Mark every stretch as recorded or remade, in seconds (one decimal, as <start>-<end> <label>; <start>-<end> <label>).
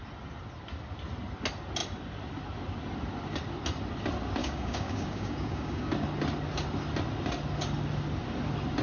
0.0-4.4 recorded; 4.4-5.9 remade; 5.9-8.8 recorded